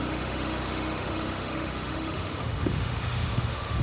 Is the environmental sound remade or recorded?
remade